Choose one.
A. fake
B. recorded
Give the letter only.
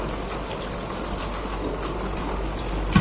B